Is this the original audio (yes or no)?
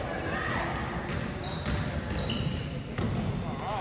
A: yes